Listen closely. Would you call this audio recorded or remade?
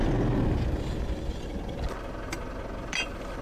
recorded